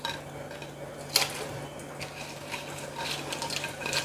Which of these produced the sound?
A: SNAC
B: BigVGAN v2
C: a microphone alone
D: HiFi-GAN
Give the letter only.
C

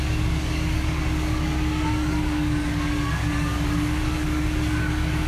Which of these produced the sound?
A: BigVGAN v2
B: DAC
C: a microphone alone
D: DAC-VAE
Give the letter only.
B